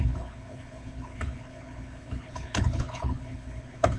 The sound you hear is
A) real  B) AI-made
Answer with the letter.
B